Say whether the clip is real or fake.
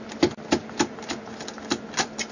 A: real